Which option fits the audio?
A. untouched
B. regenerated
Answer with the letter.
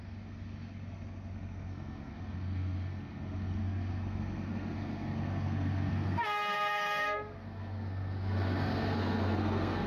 B